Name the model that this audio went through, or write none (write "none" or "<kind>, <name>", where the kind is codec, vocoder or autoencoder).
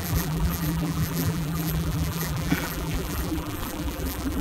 vocoder, BigVGAN v2